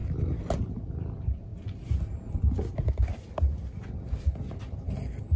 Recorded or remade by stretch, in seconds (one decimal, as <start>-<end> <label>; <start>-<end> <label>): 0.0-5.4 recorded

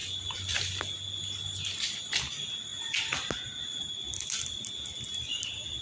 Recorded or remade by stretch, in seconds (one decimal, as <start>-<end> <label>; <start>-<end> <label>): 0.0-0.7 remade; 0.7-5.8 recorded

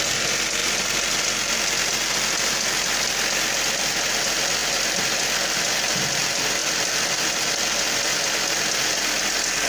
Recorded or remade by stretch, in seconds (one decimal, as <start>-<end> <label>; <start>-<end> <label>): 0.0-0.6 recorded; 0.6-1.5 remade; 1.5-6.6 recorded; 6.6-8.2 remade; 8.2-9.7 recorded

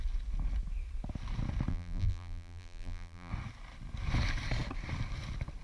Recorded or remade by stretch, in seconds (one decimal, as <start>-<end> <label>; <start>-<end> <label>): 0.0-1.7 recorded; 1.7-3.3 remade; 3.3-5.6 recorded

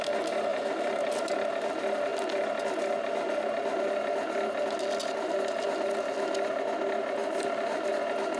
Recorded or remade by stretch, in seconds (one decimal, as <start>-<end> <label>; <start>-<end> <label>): 0.0-0.5 recorded; 0.5-1.2 remade; 1.2-5.0 recorded; 5.0-5.6 remade; 5.6-7.2 recorded; 7.2-8.0 remade; 8.0-8.4 recorded

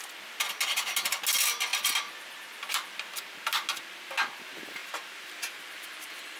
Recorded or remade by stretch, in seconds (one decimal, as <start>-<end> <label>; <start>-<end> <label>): 0.0-6.4 recorded

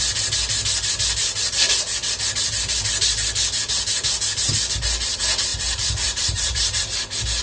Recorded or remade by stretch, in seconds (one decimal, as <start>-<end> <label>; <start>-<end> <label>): 0.0-5.5 recorded; 5.5-6.8 remade; 6.8-7.4 recorded